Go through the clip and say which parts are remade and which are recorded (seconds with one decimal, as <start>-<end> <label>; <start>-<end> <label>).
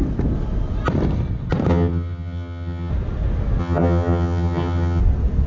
0.0-1.7 recorded; 1.7-2.9 remade; 2.9-3.6 recorded; 3.6-5.0 remade; 5.0-5.5 recorded